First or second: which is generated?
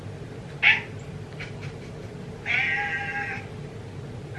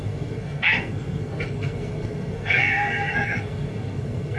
second